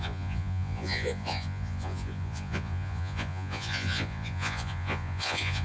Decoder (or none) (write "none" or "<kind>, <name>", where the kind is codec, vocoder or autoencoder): vocoder, Vocos